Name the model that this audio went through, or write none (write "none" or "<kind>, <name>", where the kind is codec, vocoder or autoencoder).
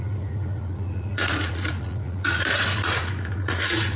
vocoder, Vocos